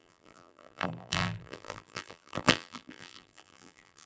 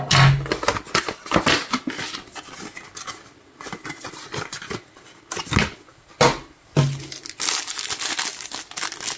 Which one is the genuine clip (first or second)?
second